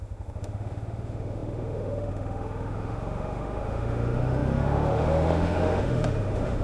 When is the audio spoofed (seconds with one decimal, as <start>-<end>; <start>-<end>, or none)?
0.0-6.6